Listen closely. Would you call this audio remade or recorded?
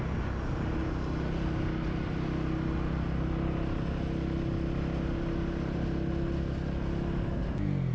recorded